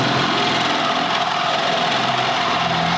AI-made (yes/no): no